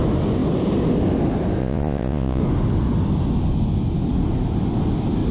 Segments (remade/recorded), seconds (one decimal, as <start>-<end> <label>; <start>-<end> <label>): 0.0-1.6 recorded; 1.6-2.4 remade; 2.4-5.3 recorded